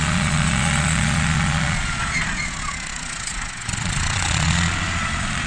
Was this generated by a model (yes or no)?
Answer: yes